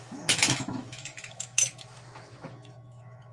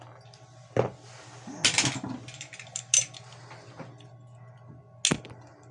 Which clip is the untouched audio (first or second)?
second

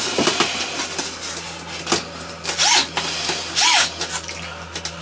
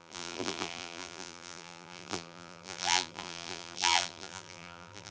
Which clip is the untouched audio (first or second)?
first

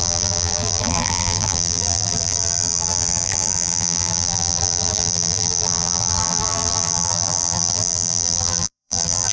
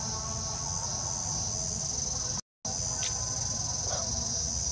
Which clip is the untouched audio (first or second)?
second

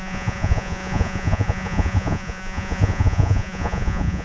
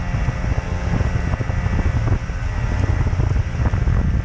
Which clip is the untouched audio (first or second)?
second